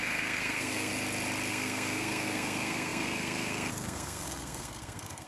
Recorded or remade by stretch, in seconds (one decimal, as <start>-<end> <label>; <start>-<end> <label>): 0.0-0.9 remade; 0.9-1.5 recorded; 1.5-5.3 remade